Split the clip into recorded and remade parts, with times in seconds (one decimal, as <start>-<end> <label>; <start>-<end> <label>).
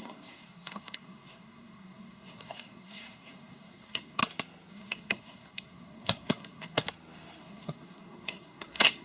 0.0-4.2 remade; 4.2-4.7 recorded; 4.7-6.8 remade; 6.8-7.4 recorded; 7.4-9.0 remade